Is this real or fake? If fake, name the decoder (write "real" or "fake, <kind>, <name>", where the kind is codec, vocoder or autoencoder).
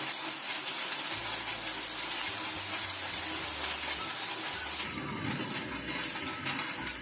real